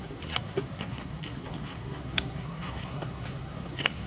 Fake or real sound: fake